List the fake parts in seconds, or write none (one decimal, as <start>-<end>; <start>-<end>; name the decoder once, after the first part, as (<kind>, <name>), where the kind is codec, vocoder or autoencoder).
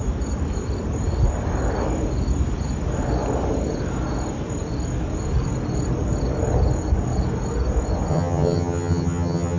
8.1-9.6 (vocoder, HiFi-GAN)